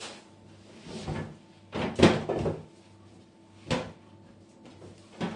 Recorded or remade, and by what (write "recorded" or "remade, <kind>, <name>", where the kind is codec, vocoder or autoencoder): recorded